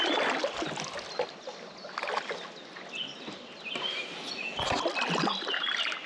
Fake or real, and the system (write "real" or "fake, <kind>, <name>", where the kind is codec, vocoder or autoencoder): real